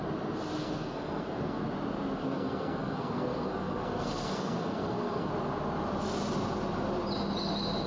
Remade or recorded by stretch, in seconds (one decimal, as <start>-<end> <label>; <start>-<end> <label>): 0.0-0.6 recorded; 0.6-1.6 remade; 1.6-2.2 recorded; 2.2-5.3 remade; 5.3-7.9 recorded